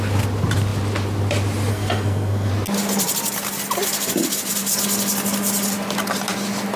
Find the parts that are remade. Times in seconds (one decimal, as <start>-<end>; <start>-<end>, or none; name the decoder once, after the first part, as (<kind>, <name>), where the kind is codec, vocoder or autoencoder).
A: 1.7-2.5 (codec, SNAC)